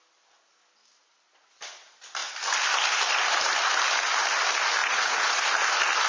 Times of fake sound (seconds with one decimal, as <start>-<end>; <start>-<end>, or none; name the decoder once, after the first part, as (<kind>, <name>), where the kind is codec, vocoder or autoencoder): 4.8-5.4 (vocoder, Vocos)